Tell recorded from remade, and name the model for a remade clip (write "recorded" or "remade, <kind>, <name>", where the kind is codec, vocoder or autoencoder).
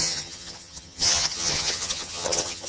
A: remade, vocoder, HiFi-GAN